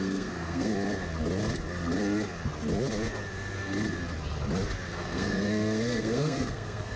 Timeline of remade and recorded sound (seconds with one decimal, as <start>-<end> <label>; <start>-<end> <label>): 0.0-0.7 remade; 0.7-4.9 recorded; 4.9-7.0 remade